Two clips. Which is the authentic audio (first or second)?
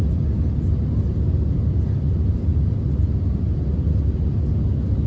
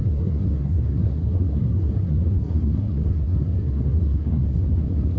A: first